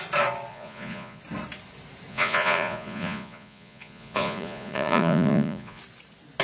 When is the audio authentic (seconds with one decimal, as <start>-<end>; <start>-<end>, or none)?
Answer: 0.0-0.5; 1.2-2.1; 5.8-6.4